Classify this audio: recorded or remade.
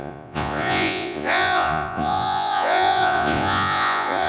remade